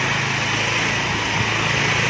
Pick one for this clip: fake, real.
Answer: real